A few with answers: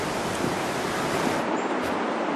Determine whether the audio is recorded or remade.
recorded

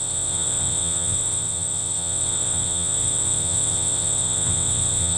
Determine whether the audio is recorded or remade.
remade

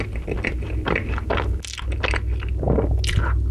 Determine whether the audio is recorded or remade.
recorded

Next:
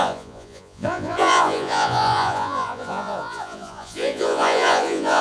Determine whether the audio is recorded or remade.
remade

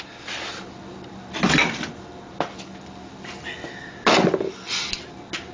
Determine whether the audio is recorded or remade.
recorded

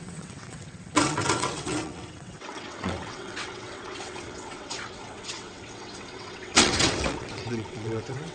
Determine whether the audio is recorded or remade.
remade